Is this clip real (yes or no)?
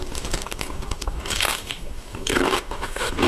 no